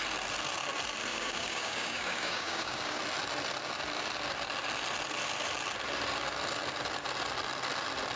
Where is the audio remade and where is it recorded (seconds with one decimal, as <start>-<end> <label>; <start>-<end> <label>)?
0.0-1.1 recorded; 1.1-3.0 remade; 3.0-8.2 recorded

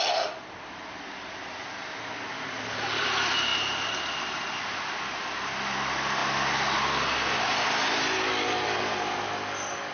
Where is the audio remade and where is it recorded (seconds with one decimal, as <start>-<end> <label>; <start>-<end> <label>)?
0.0-9.9 recorded

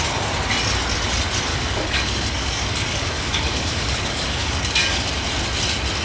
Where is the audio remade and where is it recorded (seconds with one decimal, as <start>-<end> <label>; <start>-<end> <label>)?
0.0-1.5 recorded; 1.5-5.1 remade; 5.1-6.0 recorded

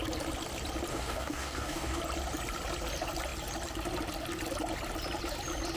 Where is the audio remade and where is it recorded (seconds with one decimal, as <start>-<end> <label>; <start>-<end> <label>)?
0.0-0.9 recorded; 0.9-2.0 remade; 2.0-5.8 recorded

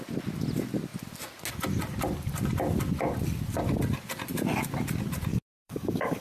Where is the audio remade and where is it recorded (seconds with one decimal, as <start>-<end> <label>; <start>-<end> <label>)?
0.0-5.3 recorded; 5.3-6.2 remade

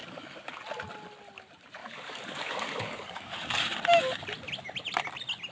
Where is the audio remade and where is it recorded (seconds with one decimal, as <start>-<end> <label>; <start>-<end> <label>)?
0.0-0.6 remade; 0.6-1.8 recorded; 1.8-3.6 remade; 3.6-5.5 recorded

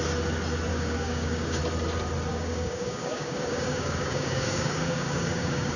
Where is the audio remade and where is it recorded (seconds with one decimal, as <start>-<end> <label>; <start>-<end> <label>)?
0.0-0.7 recorded; 0.7-1.6 remade; 1.6-2.3 recorded; 2.3-5.8 remade